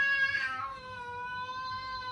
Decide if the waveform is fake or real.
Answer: fake